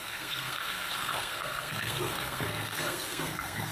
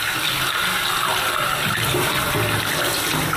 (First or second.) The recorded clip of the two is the second